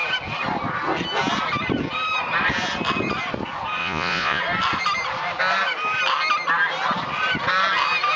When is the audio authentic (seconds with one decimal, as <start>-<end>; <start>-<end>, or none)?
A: 0.0-3.8; 4.4-8.2

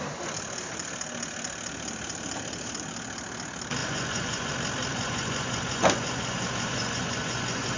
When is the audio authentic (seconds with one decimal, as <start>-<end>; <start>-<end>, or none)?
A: 0.0-3.8; 4.5-4.9

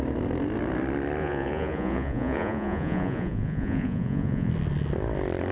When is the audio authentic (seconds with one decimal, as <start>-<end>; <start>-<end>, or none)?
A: 0.0-1.2; 4.5-5.5

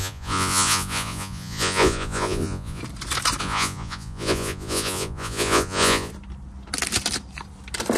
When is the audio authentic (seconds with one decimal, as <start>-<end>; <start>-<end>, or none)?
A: 2.8-3.4; 6.1-8.0

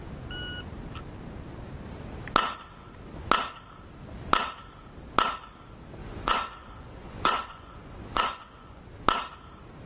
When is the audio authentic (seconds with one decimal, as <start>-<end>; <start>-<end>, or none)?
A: 0.0-6.0; 8.8-9.9

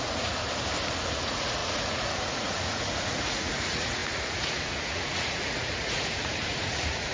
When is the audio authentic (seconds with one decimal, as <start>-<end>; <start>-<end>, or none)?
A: 0.4-1.0

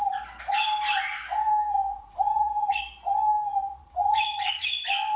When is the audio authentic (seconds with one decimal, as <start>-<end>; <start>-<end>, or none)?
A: 0.0-1.9; 2.8-3.8; 4.8-5.2